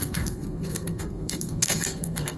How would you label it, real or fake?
fake